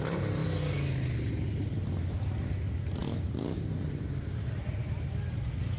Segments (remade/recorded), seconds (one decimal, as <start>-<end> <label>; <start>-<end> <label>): 0.0-5.8 recorded